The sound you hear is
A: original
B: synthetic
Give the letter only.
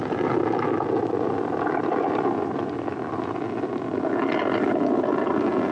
A